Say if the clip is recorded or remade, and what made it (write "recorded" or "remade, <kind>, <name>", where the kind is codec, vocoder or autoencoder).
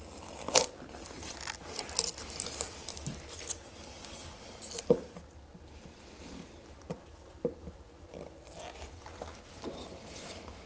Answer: recorded